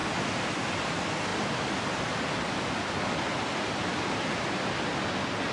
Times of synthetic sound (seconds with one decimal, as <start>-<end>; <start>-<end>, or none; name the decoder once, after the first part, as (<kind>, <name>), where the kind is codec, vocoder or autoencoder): none